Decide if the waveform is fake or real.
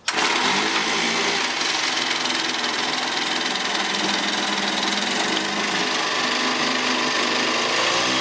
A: real